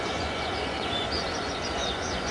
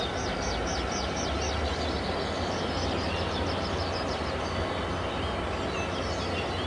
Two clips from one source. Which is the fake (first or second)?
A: first